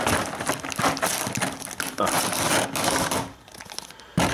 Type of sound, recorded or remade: recorded